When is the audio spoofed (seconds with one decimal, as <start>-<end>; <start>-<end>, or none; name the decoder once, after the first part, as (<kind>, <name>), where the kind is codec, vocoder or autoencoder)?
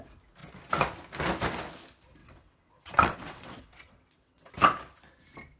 2.2-4.5 (vocoder, WaveNeXt)